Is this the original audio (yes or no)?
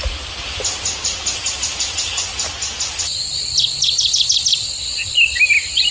yes